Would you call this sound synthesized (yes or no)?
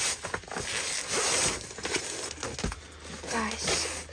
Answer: no